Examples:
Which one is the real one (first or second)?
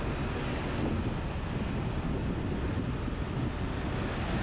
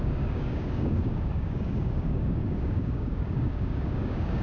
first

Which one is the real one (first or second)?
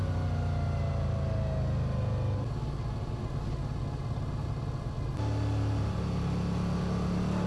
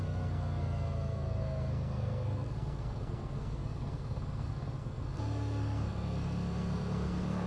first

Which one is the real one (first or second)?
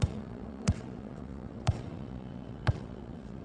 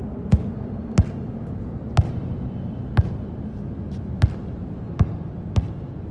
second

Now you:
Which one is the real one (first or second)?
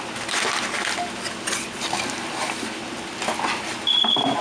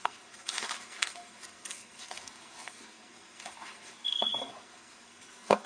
first